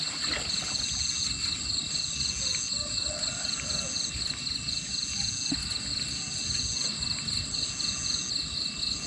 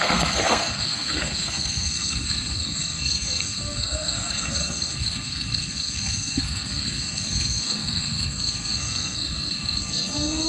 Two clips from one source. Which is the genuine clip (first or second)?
first